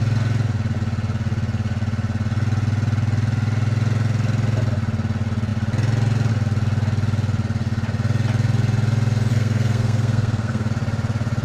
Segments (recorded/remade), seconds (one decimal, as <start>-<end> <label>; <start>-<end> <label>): 0.0-9.3 recorded; 9.3-10.7 remade; 10.7-11.4 recorded